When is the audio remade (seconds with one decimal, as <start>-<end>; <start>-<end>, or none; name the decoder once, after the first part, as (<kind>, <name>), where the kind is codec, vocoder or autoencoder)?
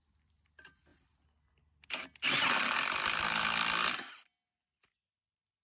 none